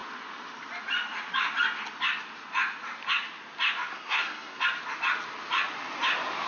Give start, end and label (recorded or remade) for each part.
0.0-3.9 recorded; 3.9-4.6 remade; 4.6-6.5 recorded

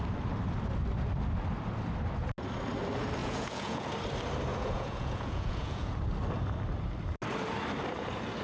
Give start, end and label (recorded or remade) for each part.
0.0-3.2 recorded; 3.2-3.9 remade; 3.9-4.5 recorded; 4.5-5.9 remade; 5.9-8.4 recorded

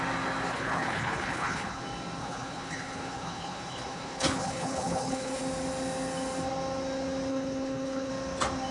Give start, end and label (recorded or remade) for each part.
0.0-0.5 recorded; 0.5-1.8 remade; 1.8-2.2 recorded; 2.2-5.4 remade; 5.4-7.3 recorded; 7.3-8.1 remade; 8.1-8.7 recorded

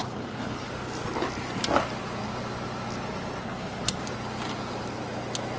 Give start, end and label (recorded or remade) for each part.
0.0-0.7 remade; 0.7-3.4 recorded; 3.4-4.0 remade; 4.0-5.6 recorded